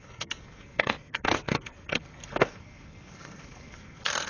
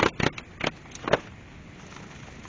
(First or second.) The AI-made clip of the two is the first